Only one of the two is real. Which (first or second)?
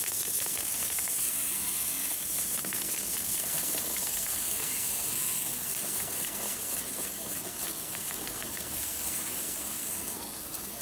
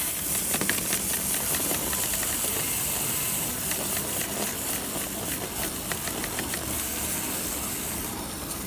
second